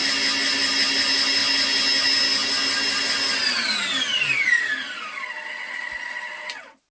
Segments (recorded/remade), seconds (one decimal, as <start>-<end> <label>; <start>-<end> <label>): 0.0-6.9 recorded